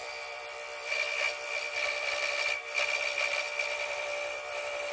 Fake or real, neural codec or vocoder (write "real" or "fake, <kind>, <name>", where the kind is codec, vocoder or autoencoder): fake, vocoder, BigVGAN v2